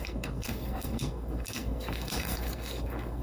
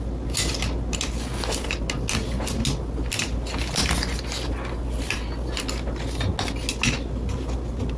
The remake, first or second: first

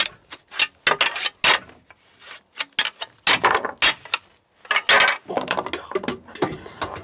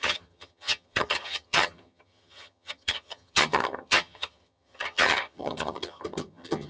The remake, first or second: second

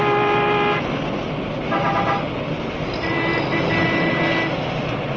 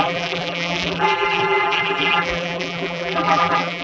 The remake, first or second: second